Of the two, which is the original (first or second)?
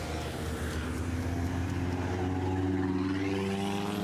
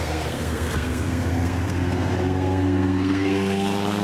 first